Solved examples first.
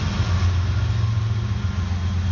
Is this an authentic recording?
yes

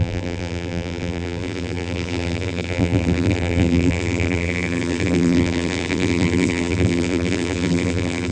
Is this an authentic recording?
no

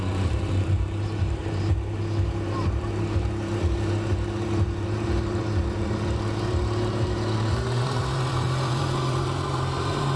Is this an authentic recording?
no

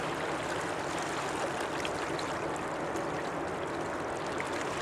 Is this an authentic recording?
yes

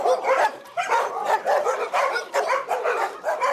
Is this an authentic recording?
no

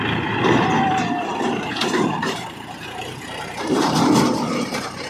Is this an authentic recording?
no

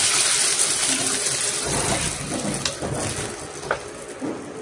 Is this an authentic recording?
yes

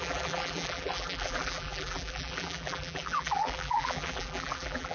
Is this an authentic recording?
no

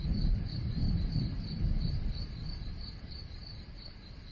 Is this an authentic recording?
no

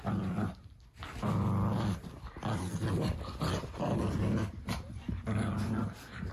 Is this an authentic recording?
no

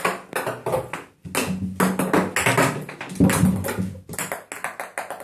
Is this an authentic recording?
yes